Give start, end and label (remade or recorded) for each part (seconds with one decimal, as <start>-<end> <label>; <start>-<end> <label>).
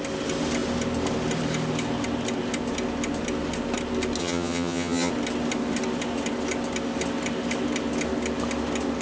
0.0-4.2 recorded; 4.2-5.1 remade; 5.1-9.0 recorded